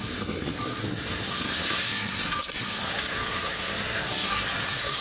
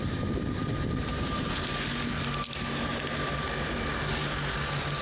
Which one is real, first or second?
second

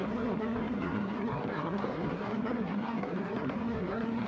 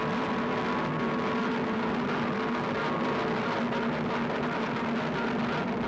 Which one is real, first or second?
second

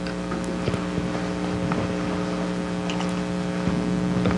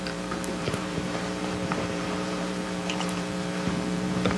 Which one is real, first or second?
first